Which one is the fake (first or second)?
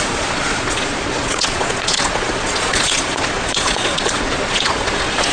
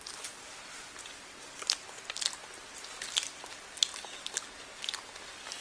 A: first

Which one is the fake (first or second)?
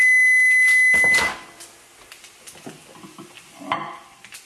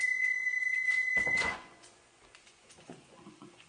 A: second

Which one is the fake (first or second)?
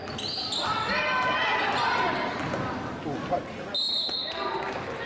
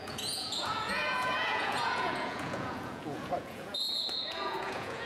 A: second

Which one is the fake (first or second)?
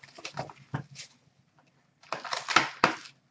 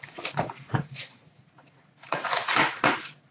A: second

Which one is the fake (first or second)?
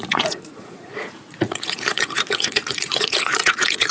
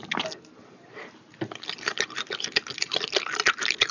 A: first